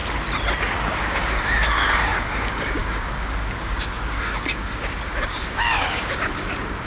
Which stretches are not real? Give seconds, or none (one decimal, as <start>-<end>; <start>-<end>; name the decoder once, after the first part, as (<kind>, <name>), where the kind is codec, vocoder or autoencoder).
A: 0.6-6.9 (codec, DAC)